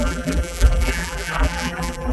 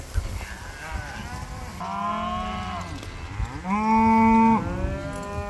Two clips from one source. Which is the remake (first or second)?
first